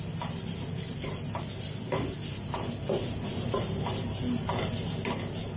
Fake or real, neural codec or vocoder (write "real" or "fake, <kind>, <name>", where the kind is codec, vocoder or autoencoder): real